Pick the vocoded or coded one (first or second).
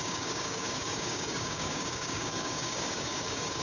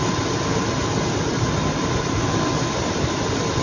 first